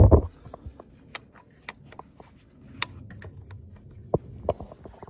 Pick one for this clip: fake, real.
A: real